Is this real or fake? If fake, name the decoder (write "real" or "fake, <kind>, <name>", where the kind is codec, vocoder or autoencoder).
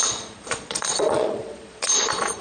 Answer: fake, vocoder, Vocos